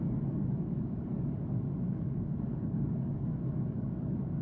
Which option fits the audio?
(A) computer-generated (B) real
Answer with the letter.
A